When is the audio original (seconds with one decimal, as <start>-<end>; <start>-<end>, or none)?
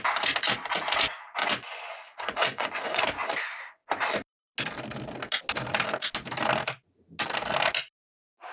0.0-1.4; 3.0-8.5